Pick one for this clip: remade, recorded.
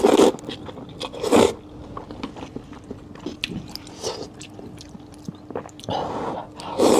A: recorded